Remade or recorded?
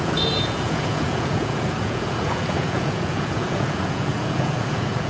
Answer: remade